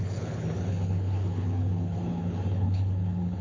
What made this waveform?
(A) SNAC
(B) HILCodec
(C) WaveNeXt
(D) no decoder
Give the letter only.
B